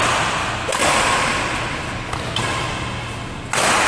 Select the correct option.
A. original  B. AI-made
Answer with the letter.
A